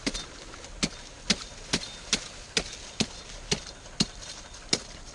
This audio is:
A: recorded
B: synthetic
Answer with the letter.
A